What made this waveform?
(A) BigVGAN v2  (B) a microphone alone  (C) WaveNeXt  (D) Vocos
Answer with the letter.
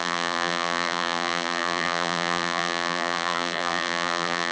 A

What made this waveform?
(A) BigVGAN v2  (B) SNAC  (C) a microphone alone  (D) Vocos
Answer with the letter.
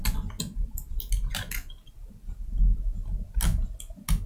C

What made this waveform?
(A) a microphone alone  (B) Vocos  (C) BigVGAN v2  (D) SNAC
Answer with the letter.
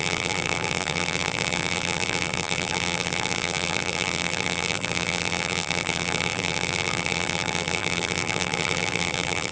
C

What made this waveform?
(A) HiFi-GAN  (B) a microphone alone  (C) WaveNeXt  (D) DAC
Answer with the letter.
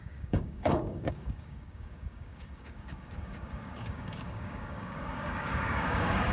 D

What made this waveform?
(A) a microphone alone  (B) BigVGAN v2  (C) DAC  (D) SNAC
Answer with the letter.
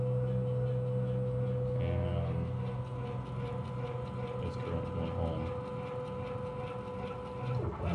A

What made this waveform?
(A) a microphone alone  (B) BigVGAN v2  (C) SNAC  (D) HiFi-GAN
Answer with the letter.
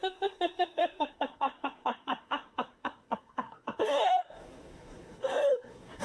C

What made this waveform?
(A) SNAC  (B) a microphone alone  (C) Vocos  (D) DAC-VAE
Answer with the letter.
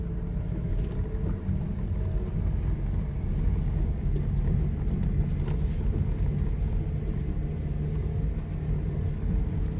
B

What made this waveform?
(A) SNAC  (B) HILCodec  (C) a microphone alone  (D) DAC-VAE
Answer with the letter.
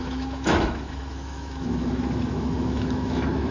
D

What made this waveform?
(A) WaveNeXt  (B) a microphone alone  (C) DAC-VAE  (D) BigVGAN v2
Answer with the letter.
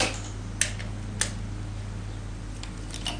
B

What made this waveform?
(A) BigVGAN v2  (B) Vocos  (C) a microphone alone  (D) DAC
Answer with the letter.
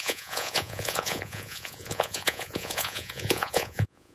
B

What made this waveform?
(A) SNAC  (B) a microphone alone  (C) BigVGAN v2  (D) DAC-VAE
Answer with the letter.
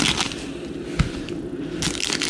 B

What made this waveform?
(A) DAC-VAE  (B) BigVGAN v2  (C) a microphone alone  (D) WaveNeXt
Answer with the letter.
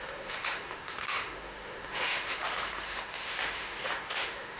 A